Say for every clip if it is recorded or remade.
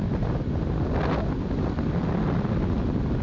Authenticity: recorded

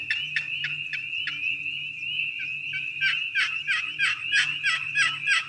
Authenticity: recorded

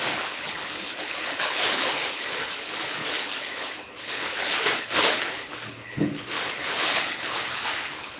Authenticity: remade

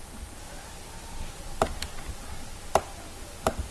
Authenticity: recorded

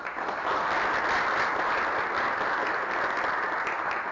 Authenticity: recorded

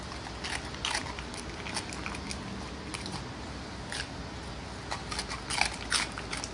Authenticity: recorded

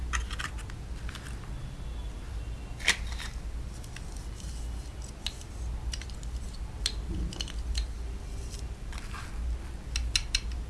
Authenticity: recorded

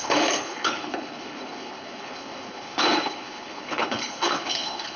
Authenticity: remade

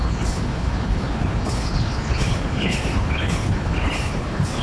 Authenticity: remade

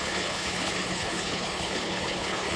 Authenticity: remade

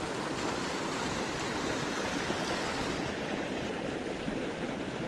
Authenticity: recorded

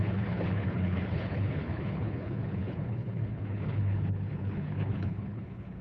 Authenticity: remade